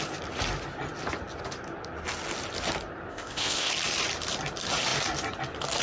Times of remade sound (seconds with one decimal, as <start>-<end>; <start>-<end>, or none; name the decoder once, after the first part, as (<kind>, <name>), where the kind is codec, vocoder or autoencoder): 3.1-3.7 (codec, ZipCodec)